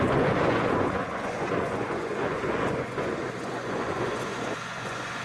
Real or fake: fake